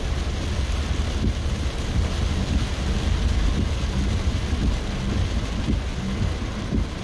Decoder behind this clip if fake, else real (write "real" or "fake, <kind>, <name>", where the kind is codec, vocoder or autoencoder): real